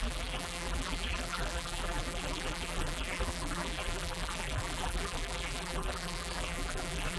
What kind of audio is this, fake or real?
fake